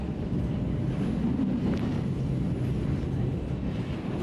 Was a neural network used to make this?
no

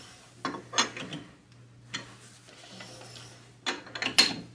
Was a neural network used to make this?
no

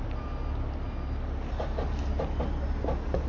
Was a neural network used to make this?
no